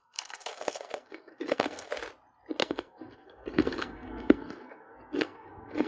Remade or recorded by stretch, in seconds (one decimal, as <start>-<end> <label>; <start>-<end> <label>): 0.0-1.9 remade; 1.9-2.6 recorded; 2.6-5.9 remade